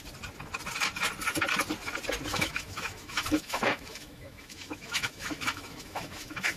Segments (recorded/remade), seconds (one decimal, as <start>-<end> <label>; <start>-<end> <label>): 0.0-2.3 recorded; 2.3-6.6 remade